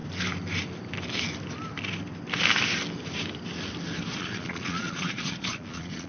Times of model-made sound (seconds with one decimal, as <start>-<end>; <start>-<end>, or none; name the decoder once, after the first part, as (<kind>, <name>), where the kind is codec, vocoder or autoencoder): 4.1-6.1 (vocoder, Vocos)